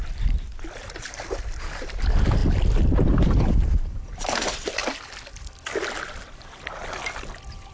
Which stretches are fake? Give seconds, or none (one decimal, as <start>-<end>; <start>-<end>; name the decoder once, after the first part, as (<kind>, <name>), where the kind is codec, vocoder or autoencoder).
0.0-4.8 (vocoder, BigVGAN v2); 5.4-7.7